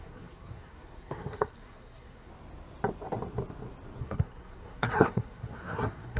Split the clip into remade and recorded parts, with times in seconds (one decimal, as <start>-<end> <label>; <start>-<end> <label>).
0.0-2.3 remade; 2.3-4.0 recorded; 4.0-6.2 remade